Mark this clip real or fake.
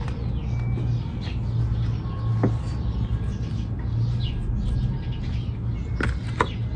real